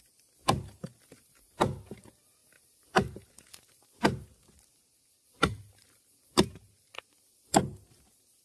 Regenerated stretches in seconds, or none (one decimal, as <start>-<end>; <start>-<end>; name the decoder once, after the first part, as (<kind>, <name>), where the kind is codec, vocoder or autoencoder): none